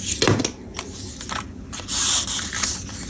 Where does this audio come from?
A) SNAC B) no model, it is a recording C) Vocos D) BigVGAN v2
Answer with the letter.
B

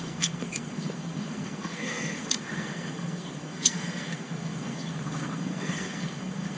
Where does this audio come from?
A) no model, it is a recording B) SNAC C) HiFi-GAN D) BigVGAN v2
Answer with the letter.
B